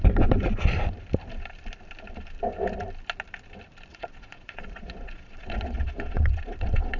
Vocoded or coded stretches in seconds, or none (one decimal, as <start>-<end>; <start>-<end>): 3.9-7.0